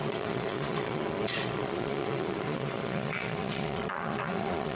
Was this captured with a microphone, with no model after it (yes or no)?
no